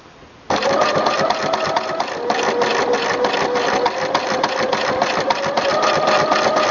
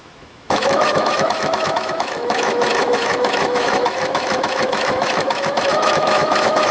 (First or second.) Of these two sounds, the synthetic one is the second